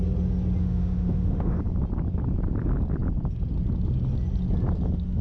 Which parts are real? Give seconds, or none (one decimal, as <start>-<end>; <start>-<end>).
0.0-0.6; 1.6-5.2